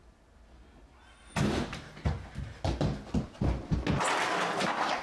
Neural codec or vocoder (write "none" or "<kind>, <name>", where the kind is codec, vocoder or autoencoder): none